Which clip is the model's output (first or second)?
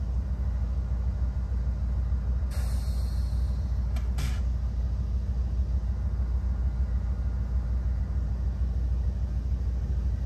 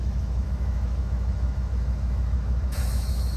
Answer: second